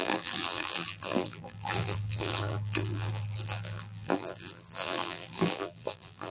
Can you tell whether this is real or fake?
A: fake